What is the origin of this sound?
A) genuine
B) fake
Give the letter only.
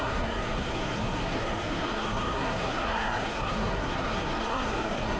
B